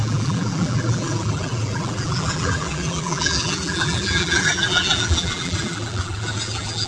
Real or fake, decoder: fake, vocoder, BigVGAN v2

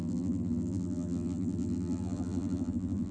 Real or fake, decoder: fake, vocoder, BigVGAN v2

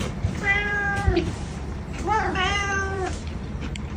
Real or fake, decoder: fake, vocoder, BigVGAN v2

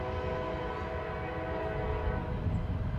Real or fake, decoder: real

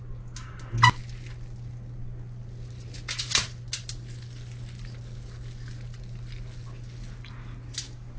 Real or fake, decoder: real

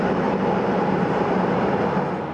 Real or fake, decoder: fake, vocoder, BigVGAN v2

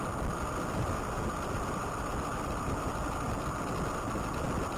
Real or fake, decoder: real